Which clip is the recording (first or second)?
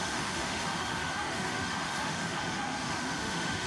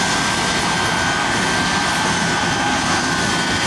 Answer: second